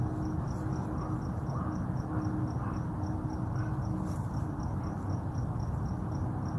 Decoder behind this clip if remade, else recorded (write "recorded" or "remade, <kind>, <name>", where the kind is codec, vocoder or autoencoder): recorded